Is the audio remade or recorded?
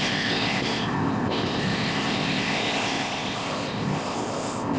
remade